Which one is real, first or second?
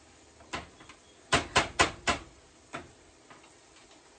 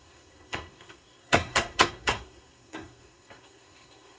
first